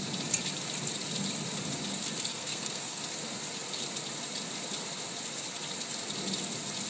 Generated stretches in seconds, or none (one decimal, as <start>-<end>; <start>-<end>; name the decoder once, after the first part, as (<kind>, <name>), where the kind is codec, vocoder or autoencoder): 2.3-3.0 (codec, SNAC)